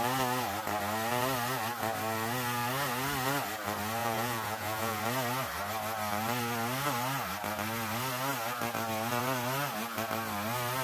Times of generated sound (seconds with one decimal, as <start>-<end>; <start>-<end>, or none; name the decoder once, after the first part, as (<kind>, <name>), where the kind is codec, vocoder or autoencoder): 4.0-5.0 (vocoder, Vocos)